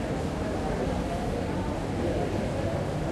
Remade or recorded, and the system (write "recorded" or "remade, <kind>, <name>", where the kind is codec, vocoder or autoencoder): recorded